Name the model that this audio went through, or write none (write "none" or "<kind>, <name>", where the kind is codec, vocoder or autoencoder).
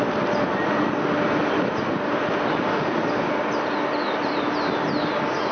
none